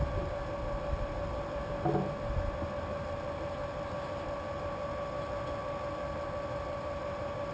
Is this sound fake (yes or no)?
no